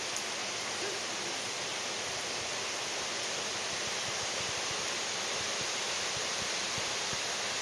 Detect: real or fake real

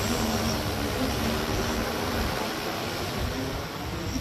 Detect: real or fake real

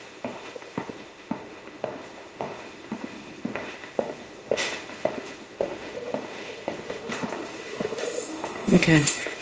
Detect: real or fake fake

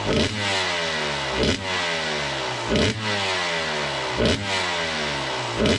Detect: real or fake real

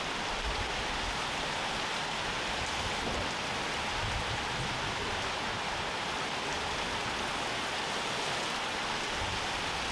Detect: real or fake real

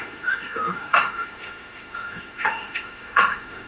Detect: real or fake fake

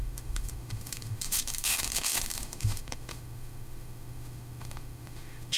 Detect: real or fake fake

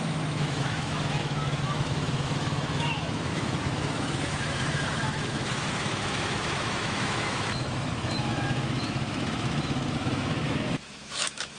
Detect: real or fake fake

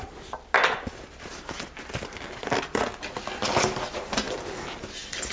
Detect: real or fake real